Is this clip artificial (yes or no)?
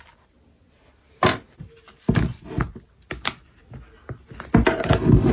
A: no